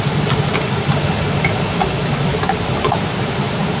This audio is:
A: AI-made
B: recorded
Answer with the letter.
B